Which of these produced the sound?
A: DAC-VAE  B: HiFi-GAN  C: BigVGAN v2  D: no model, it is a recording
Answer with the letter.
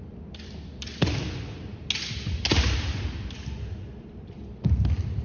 D